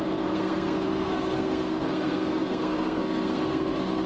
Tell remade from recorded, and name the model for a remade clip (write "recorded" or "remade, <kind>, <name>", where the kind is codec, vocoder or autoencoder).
remade, codec, SNAC